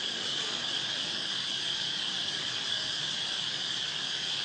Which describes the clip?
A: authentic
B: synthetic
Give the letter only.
B